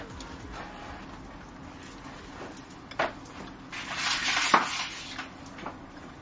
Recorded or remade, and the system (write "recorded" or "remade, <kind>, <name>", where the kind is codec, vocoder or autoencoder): recorded